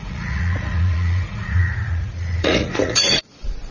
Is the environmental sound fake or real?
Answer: fake